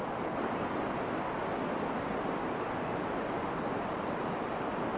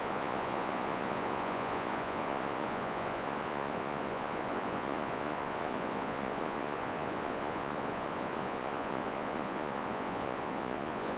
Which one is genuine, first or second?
first